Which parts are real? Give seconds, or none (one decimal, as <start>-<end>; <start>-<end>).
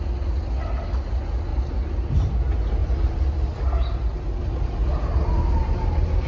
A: 0.0-1.5; 2.3-6.3